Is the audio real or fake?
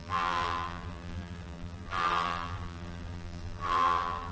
fake